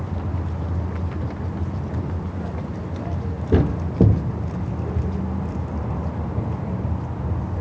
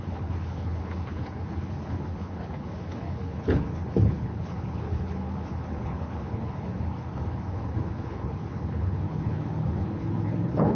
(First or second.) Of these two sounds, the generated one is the second